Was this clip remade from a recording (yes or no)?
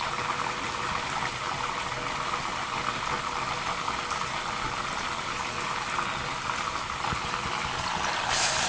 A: no